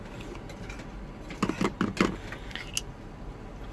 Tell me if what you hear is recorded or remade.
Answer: recorded